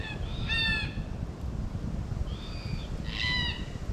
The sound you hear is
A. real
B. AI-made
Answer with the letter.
A